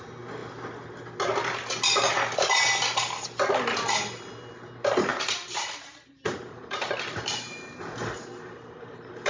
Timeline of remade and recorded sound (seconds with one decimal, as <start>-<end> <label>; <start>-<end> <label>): 0.0-5.1 recorded; 5.1-9.3 remade

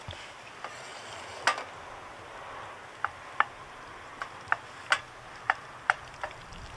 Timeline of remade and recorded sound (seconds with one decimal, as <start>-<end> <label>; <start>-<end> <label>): 0.0-6.8 recorded

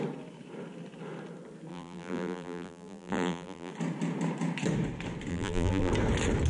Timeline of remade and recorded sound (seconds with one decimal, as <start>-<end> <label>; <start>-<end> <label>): 0.0-1.7 recorded; 1.7-3.7 remade; 3.7-5.3 recorded; 5.3-5.9 remade; 5.9-6.5 recorded

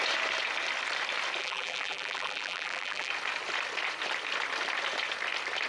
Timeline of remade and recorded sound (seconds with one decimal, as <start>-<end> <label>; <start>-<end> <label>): 0.0-1.4 recorded; 1.4-3.1 remade; 3.1-5.7 recorded

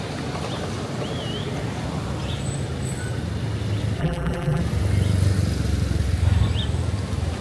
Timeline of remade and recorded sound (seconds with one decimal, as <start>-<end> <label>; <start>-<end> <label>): 0.0-4.0 recorded; 4.0-4.6 remade; 4.6-7.4 recorded